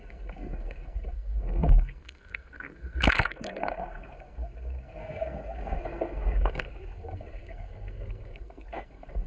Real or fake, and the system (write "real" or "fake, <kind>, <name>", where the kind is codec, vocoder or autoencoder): fake, codec, SNAC